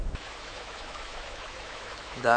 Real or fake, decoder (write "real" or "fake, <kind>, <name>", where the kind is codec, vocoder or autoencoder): fake, autoencoder, DAC-VAE